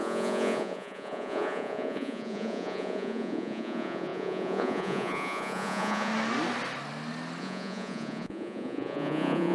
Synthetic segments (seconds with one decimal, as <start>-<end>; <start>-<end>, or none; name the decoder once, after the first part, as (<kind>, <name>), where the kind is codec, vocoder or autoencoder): 0.0-6.1 (vocoder, Vocos); 7.4-9.5